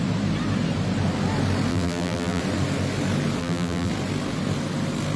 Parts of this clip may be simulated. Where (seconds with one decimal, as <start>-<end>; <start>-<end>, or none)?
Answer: 1.7-2.4; 3.4-3.9